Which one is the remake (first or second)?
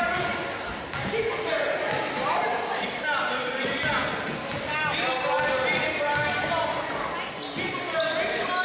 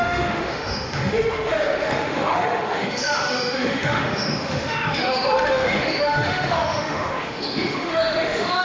second